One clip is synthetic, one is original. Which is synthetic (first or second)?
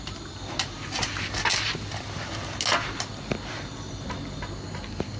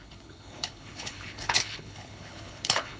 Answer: second